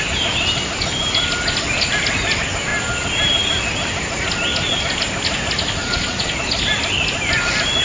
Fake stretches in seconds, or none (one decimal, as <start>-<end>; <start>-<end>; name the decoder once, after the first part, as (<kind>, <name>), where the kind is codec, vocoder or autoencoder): 5.8-6.3 (vocoder, Vocos)